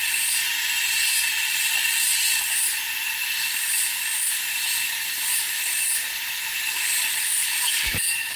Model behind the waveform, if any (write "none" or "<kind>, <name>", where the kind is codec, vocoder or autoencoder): none